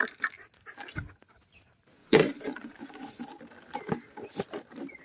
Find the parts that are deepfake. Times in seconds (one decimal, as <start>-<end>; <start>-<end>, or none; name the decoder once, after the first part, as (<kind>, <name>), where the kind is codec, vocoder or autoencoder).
2.0-3.2 (vocoder, Vocos)